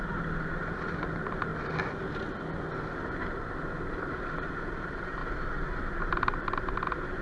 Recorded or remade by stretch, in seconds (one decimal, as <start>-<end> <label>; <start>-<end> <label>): 0.0-1.5 remade; 1.5-3.9 recorded; 3.9-5.2 remade; 5.2-6.0 recorded; 6.0-7.2 remade